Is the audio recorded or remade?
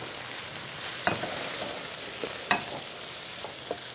recorded